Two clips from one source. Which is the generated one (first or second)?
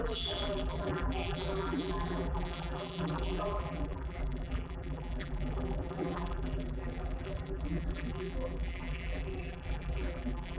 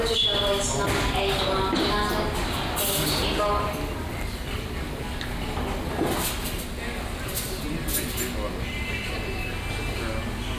first